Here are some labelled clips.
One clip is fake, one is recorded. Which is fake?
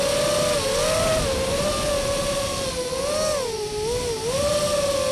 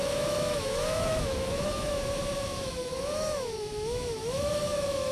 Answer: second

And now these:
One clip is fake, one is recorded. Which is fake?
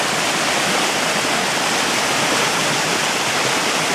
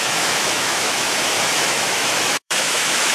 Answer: second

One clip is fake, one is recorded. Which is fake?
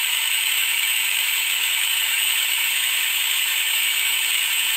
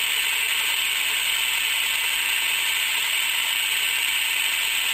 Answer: first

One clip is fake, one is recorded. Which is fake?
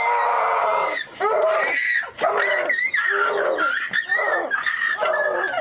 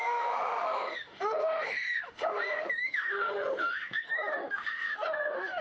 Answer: second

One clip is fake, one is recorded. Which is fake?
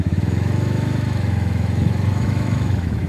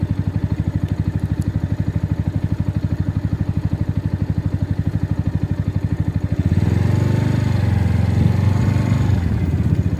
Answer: first